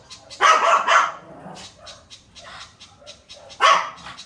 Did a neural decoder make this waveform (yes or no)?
no